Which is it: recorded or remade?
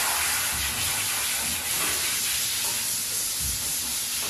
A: recorded